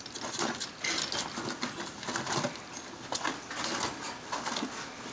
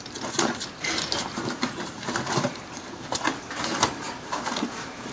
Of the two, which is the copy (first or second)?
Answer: second